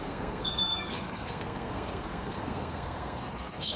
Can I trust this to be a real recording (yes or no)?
no